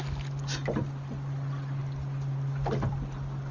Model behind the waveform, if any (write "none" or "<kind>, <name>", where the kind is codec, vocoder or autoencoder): none